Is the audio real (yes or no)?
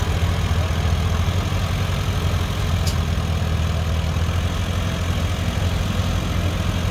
yes